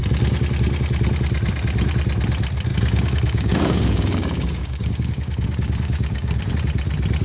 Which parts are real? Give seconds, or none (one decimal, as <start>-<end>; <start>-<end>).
0.0-2.7; 6.5-7.2